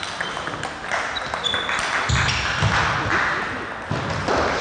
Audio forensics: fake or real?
real